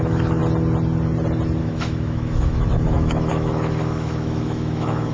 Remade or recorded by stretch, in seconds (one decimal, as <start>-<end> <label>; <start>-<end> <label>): 0.0-0.4 remade; 0.4-1.6 recorded; 1.6-5.1 remade

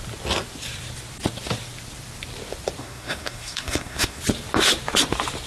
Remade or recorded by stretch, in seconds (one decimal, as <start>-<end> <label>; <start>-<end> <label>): 0.0-2.8 recorded; 2.8-4.2 remade; 4.2-5.5 recorded

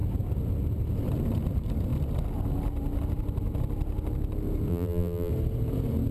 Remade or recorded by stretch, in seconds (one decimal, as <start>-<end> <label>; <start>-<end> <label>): 0.0-4.7 recorded; 4.7-5.3 remade; 5.3-6.1 recorded